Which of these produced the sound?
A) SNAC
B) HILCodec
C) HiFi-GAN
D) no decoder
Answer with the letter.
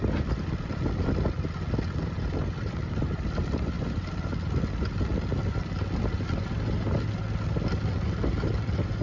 D